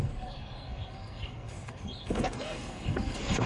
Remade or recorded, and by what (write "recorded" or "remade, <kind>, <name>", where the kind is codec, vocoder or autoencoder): remade, codec, SNAC